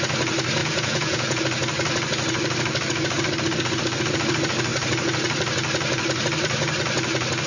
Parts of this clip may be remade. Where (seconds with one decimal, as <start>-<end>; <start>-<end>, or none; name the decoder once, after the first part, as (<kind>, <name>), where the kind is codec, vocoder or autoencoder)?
0.6-1.4 (vocoder, Vocos)